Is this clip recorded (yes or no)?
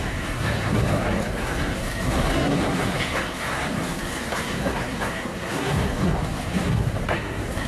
no